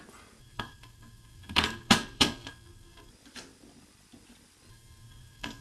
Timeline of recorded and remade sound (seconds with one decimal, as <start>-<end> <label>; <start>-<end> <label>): 0.0-0.4 recorded; 0.4-3.1 remade; 3.1-4.7 recorded; 4.7-5.6 remade